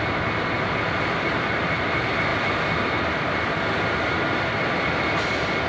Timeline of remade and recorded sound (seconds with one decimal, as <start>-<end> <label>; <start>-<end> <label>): 0.0-5.7 recorded